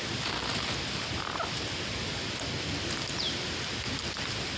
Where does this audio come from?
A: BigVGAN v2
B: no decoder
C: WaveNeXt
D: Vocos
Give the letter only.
B